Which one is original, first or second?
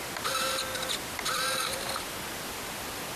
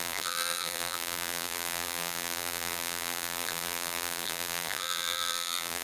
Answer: first